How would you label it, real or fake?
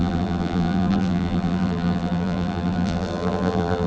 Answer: fake